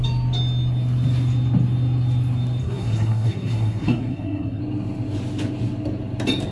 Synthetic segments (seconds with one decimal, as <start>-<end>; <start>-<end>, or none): 2.6-4.6